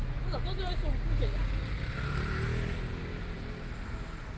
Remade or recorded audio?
recorded